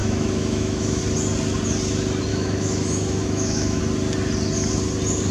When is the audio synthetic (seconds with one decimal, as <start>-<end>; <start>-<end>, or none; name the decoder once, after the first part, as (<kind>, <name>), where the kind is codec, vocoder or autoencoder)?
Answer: 0.0-1.0 (autoencoder, DAC-VAE); 2.3-3.8